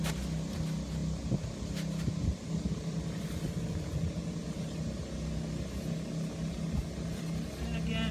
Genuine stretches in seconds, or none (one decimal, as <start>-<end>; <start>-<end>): 0.0-8.1